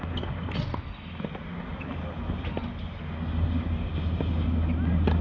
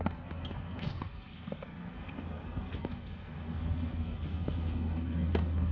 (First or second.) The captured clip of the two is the first